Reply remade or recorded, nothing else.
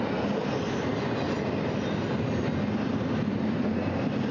recorded